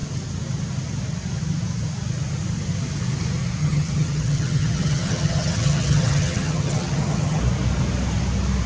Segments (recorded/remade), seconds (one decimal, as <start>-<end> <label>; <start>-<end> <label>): 0.0-3.6 recorded; 3.6-7.4 remade; 7.4-8.7 recorded